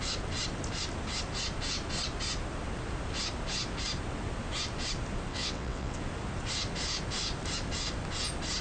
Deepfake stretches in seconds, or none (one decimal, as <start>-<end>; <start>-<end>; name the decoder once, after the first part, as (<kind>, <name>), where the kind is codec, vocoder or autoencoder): 5.3-6.0 (vocoder, WaveNeXt)